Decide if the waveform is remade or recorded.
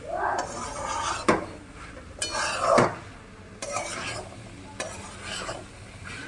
recorded